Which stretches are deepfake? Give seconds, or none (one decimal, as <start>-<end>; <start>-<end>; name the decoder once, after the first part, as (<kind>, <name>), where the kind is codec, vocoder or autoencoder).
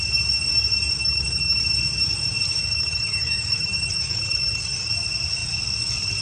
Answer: 1.0-1.6 (autoencoder, DAC-VAE); 2.6-4.9